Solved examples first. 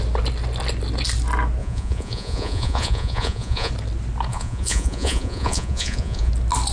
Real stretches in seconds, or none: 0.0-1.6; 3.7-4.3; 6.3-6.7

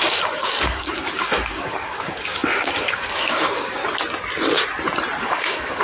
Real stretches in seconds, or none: 3.8-5.2

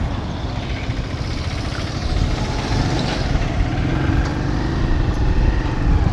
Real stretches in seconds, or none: 0.0-6.1

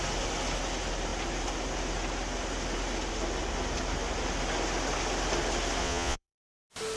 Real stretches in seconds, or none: 0.0-5.8; 6.6-7.0

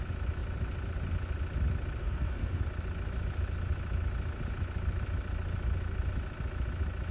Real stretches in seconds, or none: 0.0-2.0; 2.6-7.1

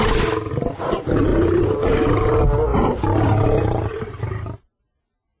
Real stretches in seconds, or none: 0.0-1.3; 2.0-2.7; 4.8-5.4

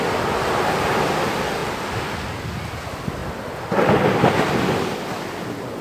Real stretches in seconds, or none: 0.0-5.8

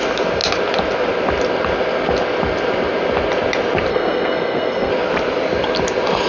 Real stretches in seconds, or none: 0.0-3.9; 4.9-6.3